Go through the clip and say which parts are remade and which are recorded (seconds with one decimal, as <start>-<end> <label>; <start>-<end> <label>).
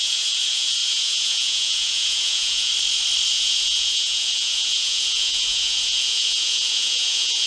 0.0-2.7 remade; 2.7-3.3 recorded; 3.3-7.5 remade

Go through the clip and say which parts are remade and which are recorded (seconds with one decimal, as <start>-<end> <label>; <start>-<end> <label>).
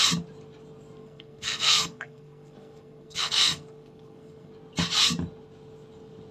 0.0-1.0 recorded; 1.0-4.5 remade; 4.5-6.3 recorded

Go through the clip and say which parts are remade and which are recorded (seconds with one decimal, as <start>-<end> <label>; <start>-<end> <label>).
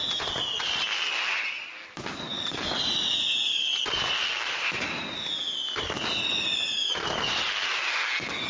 0.0-8.5 recorded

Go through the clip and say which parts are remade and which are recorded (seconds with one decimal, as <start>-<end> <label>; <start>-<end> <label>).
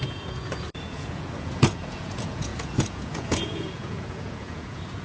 0.0-5.0 remade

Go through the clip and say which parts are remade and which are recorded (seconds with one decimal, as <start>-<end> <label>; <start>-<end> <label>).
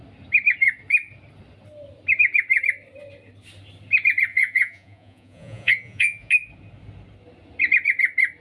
0.0-4.3 recorded; 4.3-6.3 remade; 6.3-8.4 recorded